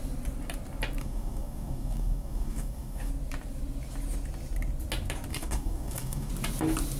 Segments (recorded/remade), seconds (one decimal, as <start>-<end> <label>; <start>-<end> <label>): 0.0-1.0 recorded; 1.0-3.1 remade; 3.1-5.3 recorded; 5.3-6.3 remade; 6.3-7.0 recorded